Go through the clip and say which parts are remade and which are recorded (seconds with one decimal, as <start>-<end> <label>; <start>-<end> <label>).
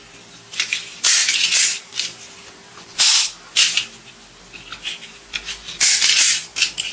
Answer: 0.0-1.2 recorded; 1.2-3.0 remade; 3.0-6.9 recorded